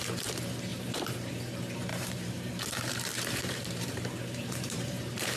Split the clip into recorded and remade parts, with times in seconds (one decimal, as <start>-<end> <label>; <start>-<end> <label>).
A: 0.0-0.7 recorded; 0.7-1.3 remade; 1.3-1.9 recorded; 1.9-5.4 remade